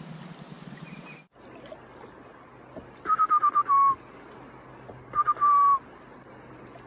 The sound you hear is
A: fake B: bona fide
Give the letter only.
B